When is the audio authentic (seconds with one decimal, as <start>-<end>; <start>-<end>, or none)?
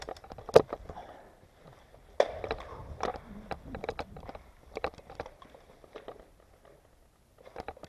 0.0-3.1; 5.7-7.9